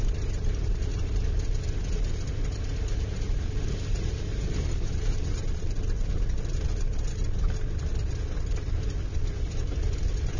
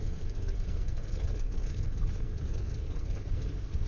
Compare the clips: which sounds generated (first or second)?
second